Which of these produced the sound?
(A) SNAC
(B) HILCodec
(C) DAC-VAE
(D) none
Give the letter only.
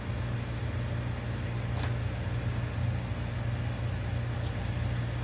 D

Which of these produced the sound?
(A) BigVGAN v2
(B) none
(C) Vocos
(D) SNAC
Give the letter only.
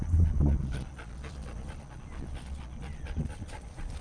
C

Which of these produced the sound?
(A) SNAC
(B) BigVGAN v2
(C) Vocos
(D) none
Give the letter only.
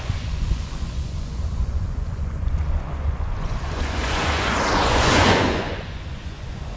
C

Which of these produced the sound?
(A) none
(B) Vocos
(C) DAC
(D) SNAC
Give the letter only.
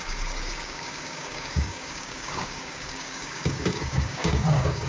C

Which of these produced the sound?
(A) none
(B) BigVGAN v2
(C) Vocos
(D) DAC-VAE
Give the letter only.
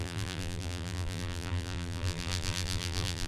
B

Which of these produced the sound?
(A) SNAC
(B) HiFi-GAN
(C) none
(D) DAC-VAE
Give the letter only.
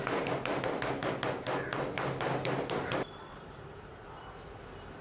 C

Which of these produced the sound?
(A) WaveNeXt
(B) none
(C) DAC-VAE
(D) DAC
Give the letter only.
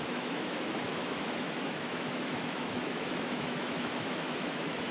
C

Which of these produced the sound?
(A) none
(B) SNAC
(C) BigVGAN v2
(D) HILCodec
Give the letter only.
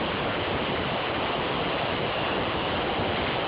A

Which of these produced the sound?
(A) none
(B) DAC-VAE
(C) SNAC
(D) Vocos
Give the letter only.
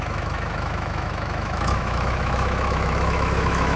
B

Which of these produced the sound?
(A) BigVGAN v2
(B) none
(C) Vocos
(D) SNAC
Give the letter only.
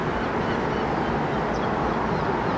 B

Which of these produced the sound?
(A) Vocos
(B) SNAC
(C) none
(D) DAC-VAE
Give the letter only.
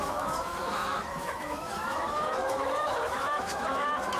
D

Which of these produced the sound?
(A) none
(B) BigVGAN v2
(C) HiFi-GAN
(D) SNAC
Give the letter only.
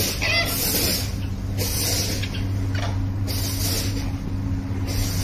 A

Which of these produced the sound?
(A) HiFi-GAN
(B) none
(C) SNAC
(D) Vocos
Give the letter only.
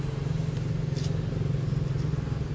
B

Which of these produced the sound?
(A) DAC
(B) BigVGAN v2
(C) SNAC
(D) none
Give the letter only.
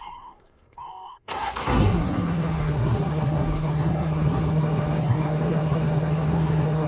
C